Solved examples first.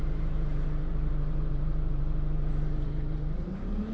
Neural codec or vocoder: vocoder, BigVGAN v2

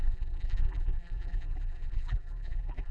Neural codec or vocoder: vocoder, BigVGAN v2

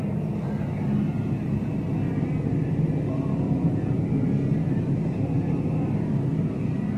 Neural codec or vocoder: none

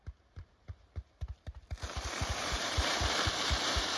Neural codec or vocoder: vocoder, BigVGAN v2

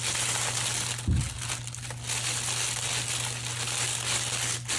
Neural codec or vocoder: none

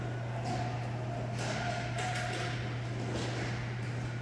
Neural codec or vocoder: none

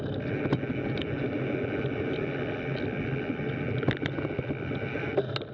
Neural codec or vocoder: none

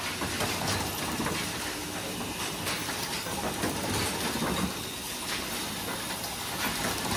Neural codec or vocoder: none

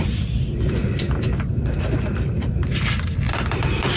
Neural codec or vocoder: none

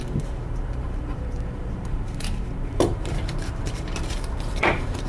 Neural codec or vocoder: vocoder, BigVGAN v2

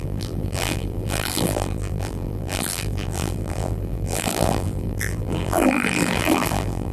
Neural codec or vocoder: vocoder, BigVGAN v2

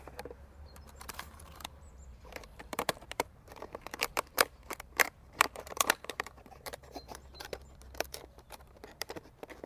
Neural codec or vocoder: vocoder, BigVGAN v2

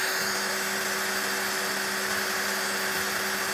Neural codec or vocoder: none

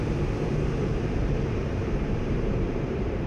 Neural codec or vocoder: vocoder, BigVGAN v2